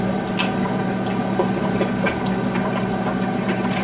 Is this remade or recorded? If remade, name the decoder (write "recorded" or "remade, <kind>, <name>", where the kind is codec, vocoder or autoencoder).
recorded